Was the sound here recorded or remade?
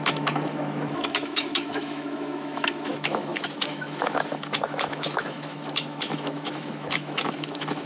remade